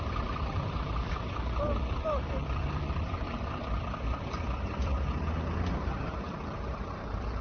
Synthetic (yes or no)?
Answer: yes